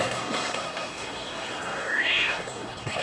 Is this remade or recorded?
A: remade